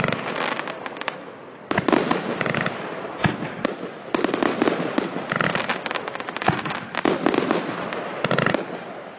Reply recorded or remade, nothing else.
recorded